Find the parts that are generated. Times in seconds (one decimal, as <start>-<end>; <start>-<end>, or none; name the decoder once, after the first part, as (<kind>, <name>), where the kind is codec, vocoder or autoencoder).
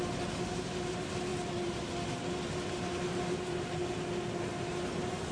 none